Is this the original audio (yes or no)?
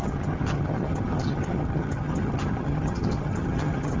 no